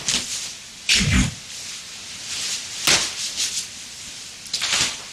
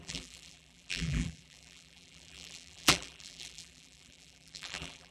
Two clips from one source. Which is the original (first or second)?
first